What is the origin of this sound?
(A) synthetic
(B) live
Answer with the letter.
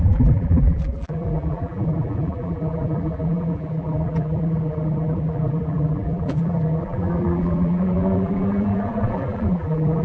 A